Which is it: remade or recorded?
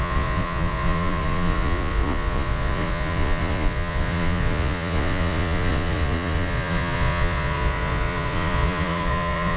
remade